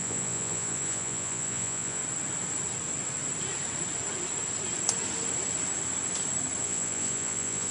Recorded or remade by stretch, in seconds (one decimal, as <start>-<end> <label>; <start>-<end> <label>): 0.0-2.0 remade; 2.0-6.6 recorded; 6.6-7.7 remade